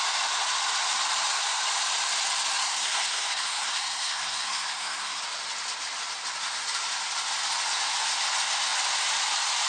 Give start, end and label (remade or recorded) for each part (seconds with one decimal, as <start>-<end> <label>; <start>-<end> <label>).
0.0-2.6 recorded; 2.6-5.2 remade; 5.2-9.7 recorded

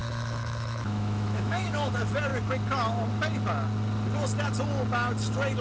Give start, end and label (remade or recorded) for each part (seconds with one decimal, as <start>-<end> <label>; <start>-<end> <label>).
0.0-1.9 remade; 1.9-5.6 recorded

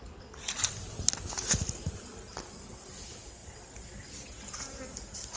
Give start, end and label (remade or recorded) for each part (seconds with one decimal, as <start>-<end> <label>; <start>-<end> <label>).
0.0-5.4 recorded

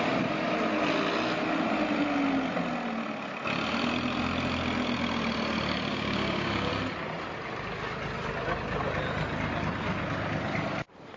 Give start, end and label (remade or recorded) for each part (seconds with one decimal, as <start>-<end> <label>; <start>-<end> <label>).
0.0-5.9 recorded; 5.9-6.7 remade; 6.7-11.2 recorded

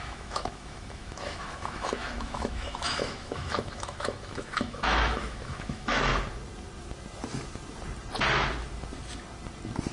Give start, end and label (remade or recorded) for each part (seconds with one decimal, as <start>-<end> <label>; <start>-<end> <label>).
0.0-6.1 remade; 6.1-9.9 recorded